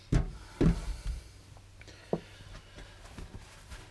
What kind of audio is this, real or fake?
real